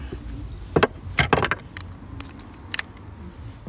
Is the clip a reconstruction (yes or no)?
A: no